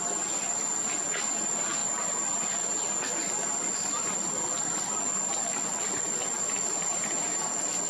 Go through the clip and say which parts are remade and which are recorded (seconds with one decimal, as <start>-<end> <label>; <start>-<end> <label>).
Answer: 0.0-6.9 recorded; 6.9-7.5 remade; 7.5-7.9 recorded